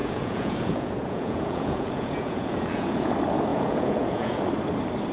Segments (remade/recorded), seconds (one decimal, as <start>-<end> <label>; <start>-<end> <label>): 0.0-3.1 remade; 3.1-3.5 recorded; 3.5-4.4 remade; 4.4-5.1 recorded